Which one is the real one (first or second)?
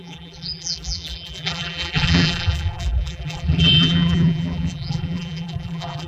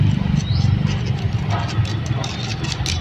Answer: second